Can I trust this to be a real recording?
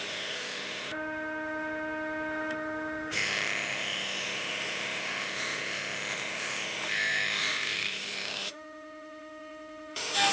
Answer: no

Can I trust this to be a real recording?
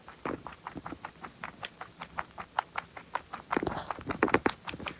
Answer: yes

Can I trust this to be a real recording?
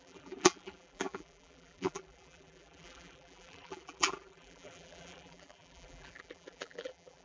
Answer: no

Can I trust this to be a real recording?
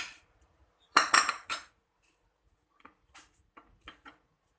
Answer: no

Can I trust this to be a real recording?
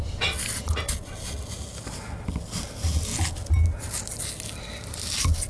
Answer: yes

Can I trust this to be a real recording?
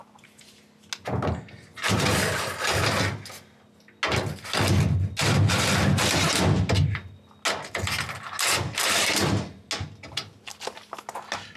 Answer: yes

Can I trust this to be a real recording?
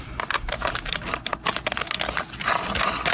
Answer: yes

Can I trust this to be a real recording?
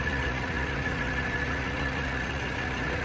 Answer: no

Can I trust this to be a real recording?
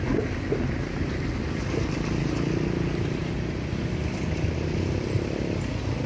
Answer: yes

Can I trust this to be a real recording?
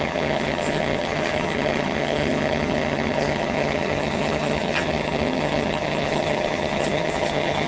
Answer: no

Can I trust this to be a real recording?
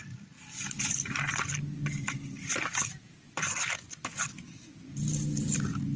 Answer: yes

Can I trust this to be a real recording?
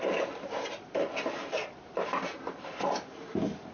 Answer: yes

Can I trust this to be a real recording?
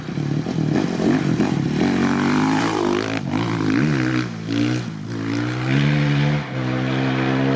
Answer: yes